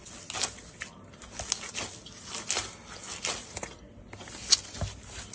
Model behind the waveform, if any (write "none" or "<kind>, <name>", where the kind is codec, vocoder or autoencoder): none